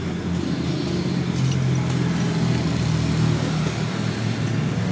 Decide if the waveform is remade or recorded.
recorded